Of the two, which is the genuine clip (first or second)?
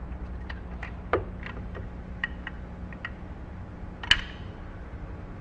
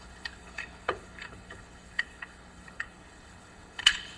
first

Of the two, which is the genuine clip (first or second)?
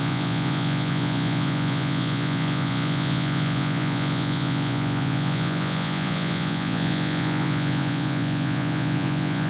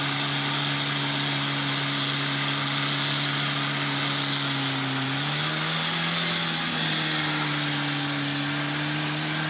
second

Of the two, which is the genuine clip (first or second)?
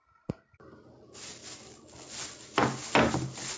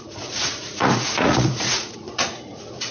first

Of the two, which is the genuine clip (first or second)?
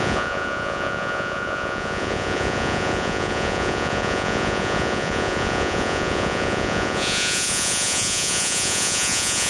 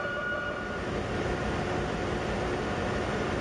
second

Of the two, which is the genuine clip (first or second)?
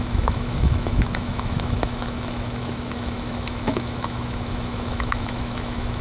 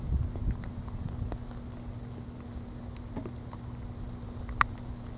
second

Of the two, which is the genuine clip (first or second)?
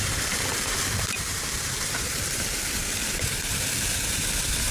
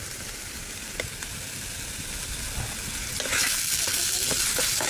second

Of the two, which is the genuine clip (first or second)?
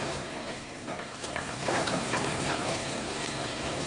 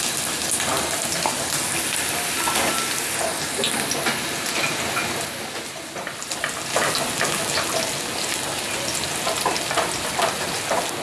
second